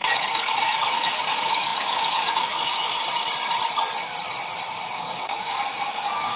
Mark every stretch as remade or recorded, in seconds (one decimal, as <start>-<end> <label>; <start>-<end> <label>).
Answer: 0.0-3.0 remade; 3.0-4.8 recorded; 4.8-6.4 remade